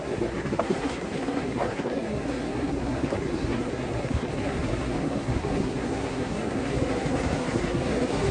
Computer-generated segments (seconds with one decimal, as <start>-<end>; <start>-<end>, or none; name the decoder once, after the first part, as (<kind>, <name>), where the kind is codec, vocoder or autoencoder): 0.0-8.3 (codec, SNAC)